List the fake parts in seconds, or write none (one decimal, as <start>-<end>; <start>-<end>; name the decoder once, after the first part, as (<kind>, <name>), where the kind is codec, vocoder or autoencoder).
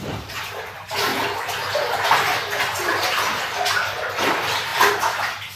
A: 0.0-1.1 (vocoder, BigVGAN v2); 4.3-4.7